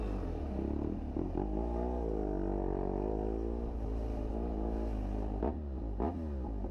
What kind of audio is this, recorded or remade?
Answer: recorded